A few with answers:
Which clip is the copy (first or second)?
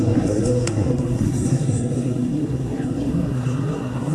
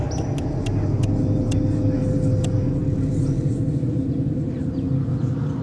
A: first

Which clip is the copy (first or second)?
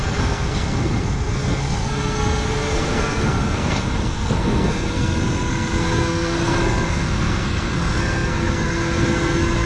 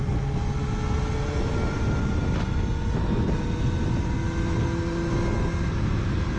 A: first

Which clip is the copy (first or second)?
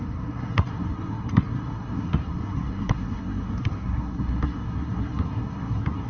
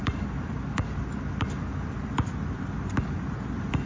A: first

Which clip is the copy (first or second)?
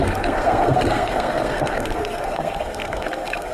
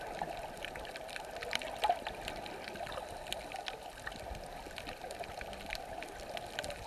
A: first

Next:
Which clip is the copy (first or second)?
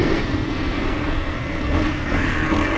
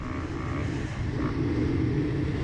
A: first